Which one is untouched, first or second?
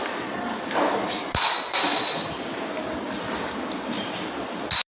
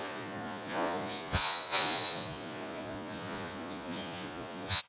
first